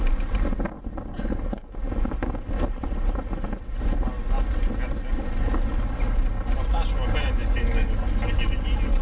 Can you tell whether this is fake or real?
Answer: real